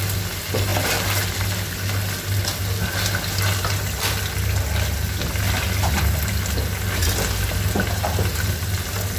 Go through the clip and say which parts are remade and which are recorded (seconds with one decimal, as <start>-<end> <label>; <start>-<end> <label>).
0.0-9.2 recorded

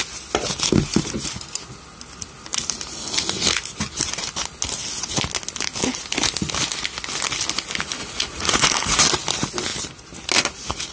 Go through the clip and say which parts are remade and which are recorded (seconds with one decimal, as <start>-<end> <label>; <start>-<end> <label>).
0.0-8.0 recorded; 8.0-9.0 remade; 9.0-10.9 recorded

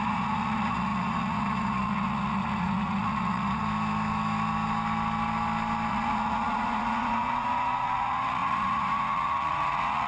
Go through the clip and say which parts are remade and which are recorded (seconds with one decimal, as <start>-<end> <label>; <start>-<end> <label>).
0.0-3.6 remade; 3.6-5.9 recorded; 5.9-10.1 remade

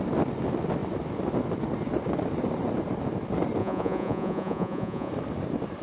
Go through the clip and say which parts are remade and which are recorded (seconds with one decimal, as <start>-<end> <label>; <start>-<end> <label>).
0.0-3.6 recorded; 3.6-5.1 remade; 5.1-5.8 recorded

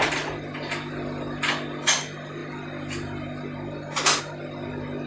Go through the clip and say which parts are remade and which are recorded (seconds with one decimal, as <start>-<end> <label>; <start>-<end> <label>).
0.0-5.1 recorded

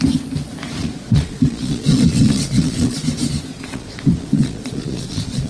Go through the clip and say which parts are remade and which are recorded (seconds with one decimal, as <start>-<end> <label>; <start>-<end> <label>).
0.0-0.8 recorded; 0.8-3.0 remade; 3.0-3.5 recorded; 3.5-5.5 remade

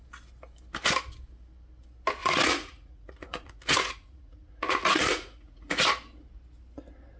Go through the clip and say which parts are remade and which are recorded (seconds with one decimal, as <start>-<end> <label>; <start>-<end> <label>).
0.0-2.2 recorded; 2.2-5.8 remade; 5.8-7.2 recorded